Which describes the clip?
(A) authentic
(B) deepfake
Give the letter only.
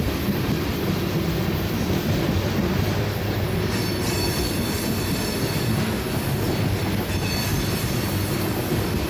A